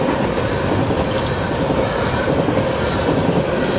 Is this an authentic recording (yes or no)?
yes